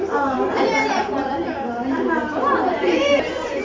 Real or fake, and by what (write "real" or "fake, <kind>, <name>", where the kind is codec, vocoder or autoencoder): fake, vocoder, BigVGAN v2